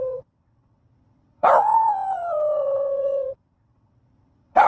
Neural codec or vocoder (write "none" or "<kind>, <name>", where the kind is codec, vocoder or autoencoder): vocoder, WaveNeXt